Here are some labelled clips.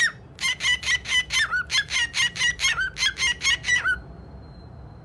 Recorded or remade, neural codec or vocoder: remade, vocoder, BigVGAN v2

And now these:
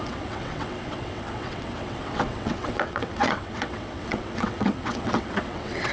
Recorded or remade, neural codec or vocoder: remade, vocoder, WaveNeXt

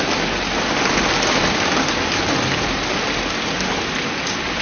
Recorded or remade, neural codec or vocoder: recorded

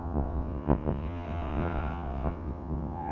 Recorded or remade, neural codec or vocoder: remade, vocoder, WaveNeXt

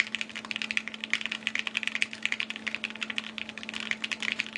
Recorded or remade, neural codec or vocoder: recorded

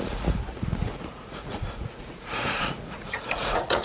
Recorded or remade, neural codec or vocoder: remade, vocoder, Vocos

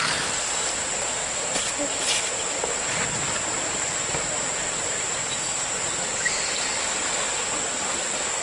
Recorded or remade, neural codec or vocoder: recorded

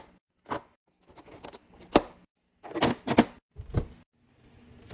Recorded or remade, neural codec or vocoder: recorded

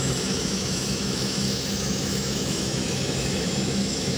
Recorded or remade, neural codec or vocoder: remade, autoencoder, DAC-VAE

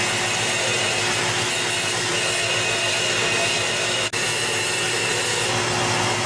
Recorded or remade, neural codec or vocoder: recorded